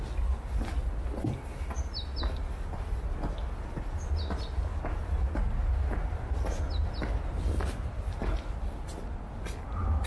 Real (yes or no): yes